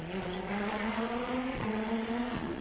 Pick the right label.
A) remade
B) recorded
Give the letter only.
A